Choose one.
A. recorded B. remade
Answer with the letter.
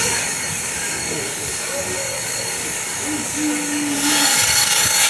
B